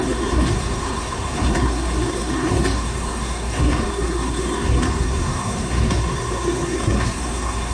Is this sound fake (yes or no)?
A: yes